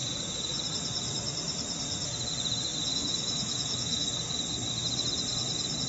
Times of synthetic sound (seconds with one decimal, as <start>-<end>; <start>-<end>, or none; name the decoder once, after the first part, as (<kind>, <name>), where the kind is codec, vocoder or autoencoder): 2.9-4.1 (autoencoder, DAC-VAE)